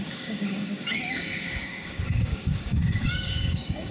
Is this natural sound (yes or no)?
no